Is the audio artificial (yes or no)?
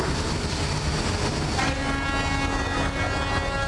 no